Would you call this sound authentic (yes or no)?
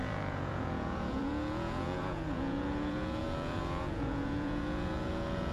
no